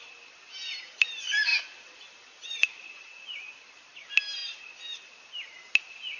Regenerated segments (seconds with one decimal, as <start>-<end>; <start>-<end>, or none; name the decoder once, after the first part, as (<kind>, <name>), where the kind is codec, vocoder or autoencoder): none